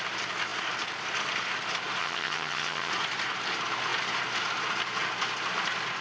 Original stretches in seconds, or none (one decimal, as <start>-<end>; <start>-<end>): 0.0-2.0; 2.9-6.0